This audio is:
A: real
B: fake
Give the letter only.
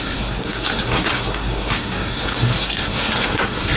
B